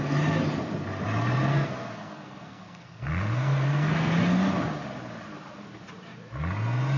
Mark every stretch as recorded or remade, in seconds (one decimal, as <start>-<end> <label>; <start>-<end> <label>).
0.0-1.5 recorded; 1.5-4.1 remade; 4.1-7.0 recorded